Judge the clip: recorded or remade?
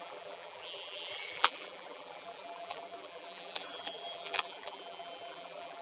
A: remade